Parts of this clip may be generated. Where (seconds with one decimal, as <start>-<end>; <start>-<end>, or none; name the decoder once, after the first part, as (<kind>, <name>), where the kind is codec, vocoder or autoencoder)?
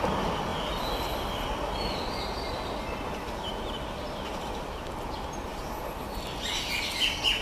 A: none